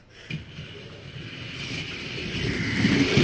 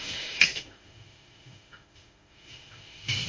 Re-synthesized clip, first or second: second